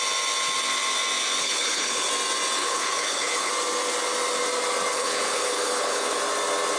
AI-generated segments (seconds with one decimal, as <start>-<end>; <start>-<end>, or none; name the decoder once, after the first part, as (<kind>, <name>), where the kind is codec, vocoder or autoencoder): 1.4-2.1 (codec, HILCodec); 2.6-3.5; 4.9-6.2